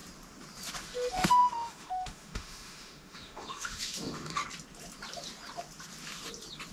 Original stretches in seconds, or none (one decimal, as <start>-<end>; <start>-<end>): 0.0-0.8; 4.4-6.7

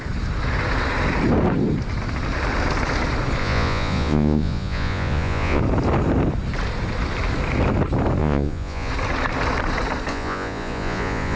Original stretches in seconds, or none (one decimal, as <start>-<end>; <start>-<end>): 0.0-3.4; 5.6-8.2; 8.9-10.1

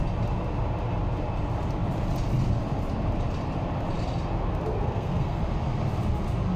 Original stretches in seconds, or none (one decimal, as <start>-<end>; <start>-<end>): 0.0-4.7; 5.4-6.6

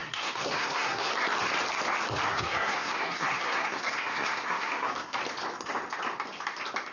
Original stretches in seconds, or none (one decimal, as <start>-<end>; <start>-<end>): 1.1-2.3; 5.2-6.9

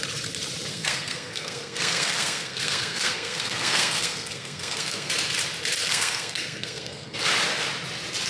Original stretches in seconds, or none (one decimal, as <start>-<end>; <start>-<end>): 0.0-0.7; 5.1-5.8; 7.3-8.3

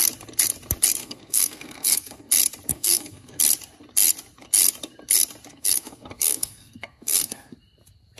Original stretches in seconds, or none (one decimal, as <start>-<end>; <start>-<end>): 0.0-1.0; 2.3-2.7; 3.4-5.5; 7.5-8.2